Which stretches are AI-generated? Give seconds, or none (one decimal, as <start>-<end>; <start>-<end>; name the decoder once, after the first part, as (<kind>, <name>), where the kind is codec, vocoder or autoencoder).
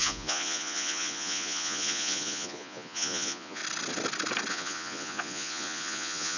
0.0-3.6 (vocoder, Vocos); 4.5-6.4